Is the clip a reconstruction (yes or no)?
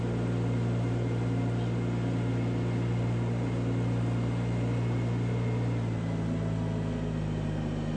no